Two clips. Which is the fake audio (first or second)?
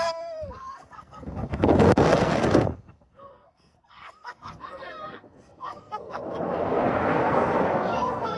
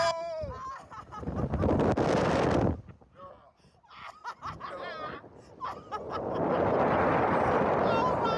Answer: first